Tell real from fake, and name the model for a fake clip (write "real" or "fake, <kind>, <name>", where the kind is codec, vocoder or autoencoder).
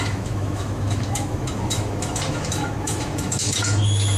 fake, autoencoder, DAC-VAE